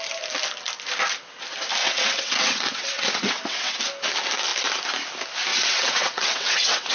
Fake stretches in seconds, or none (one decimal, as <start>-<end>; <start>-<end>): 1.8-3.8; 5.5-6.9